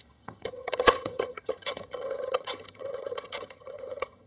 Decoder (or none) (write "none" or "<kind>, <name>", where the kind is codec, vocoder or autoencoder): vocoder, HiFi-GAN